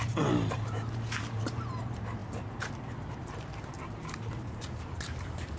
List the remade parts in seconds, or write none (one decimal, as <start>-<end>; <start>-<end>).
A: 0.0-5.6